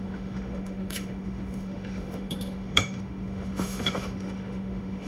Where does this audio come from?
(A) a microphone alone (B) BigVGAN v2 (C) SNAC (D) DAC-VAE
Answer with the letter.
D